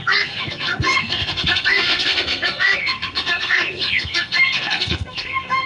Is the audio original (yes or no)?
no